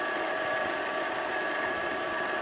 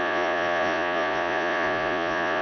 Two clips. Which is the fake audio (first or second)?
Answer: second